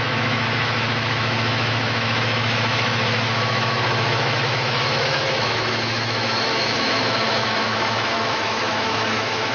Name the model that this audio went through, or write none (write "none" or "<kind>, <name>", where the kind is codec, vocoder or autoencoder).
autoencoder, DAC-VAE